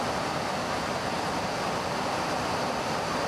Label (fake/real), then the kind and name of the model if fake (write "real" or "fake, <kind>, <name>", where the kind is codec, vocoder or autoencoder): real